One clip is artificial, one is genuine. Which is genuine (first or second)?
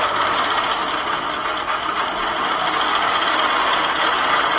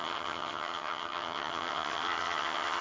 first